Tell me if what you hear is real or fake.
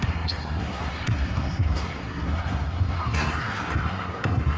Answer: fake